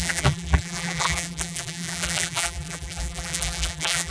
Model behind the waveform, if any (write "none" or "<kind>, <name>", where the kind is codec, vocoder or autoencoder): vocoder, BigVGAN v2